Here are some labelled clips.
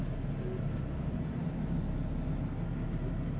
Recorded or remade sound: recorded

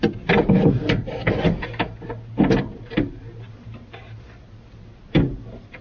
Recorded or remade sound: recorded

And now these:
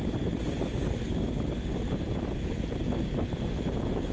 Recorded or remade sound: recorded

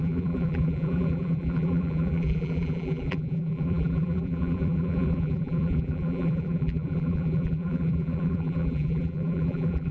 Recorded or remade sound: remade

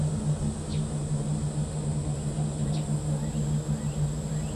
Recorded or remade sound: recorded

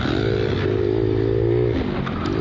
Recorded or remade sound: remade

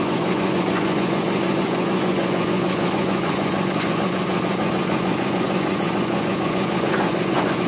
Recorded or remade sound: remade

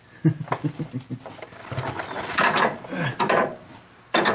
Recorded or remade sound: recorded